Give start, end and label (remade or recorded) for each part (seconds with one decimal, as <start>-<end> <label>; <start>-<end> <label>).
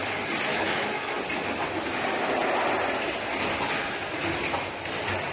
0.0-0.5 recorded; 0.5-1.2 remade; 1.2-5.3 recorded